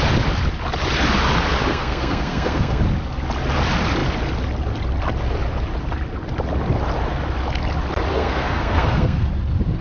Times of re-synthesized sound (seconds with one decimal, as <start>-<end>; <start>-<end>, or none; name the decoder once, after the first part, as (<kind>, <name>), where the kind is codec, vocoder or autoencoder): 1.7-2.8 (codec, SNAC); 8.1-9.3